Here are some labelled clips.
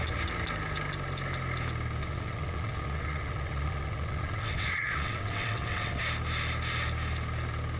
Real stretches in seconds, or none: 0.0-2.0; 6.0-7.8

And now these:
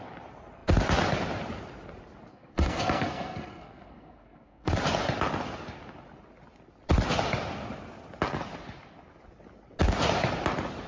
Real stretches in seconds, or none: 0.0-2.3; 4.7-10.9

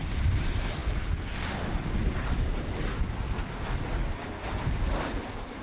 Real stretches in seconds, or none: 0.0-5.6

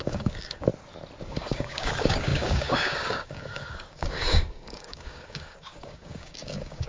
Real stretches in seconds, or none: 0.7-1.2

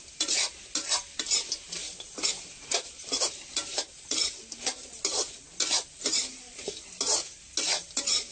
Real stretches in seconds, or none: 0.0-1.8; 3.3-8.3

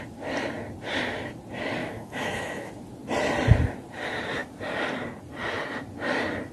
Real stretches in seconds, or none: 0.0-1.8; 2.7-6.5